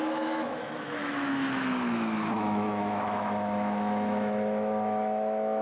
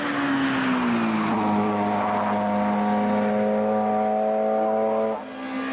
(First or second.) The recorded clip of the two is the second